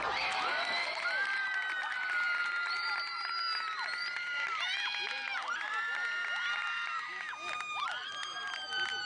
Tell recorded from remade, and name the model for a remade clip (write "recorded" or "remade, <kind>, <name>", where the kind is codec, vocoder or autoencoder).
remade, vocoder, BigVGAN v2